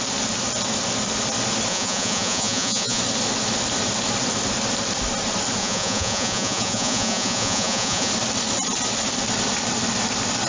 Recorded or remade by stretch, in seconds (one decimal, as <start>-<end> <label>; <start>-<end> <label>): 0.0-1.7 recorded; 1.7-3.0 remade; 3.0-5.6 recorded; 5.6-8.1 remade; 8.1-10.5 recorded